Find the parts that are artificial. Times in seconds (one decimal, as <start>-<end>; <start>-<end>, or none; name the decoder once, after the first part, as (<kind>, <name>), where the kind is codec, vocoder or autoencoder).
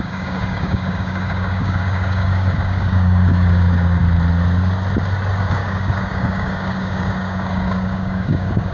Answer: 0.0-4.0 (codec, DAC); 5.5-8.7